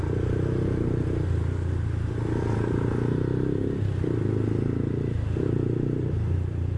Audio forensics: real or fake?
real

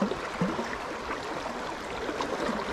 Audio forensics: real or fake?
real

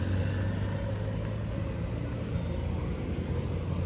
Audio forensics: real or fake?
real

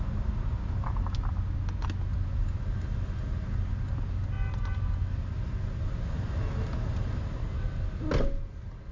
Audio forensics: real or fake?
real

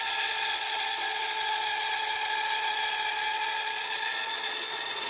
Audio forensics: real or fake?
fake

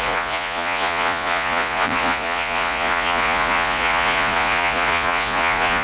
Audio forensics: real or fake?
fake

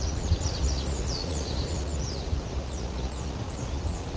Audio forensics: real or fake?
fake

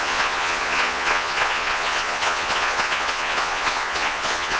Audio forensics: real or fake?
fake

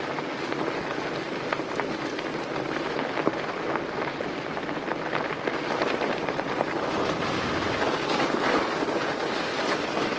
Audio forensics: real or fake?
real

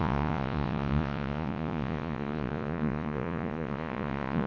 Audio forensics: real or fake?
fake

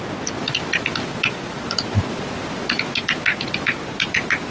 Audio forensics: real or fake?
real